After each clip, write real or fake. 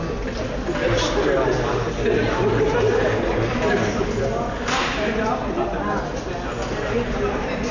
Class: real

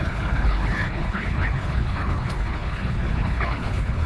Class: fake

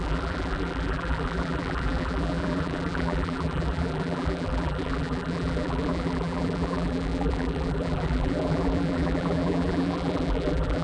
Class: fake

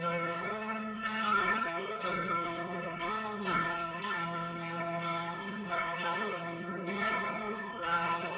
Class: fake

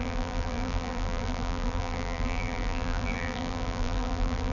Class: fake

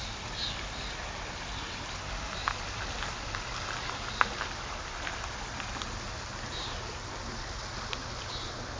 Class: real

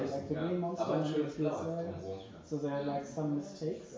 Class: real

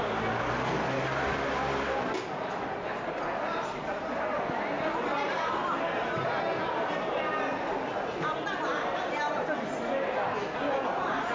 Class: real